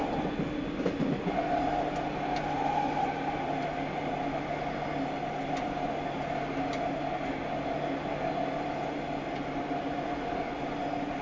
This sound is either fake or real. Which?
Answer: real